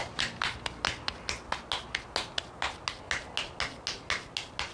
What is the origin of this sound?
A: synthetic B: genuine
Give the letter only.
B